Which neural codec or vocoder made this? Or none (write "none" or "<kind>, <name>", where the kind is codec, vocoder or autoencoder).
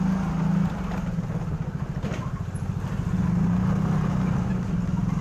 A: none